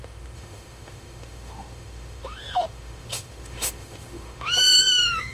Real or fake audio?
fake